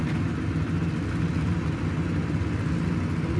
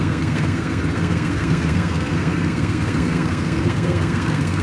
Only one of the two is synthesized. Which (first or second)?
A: second